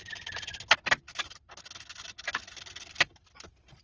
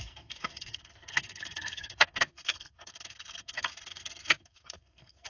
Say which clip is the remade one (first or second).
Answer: second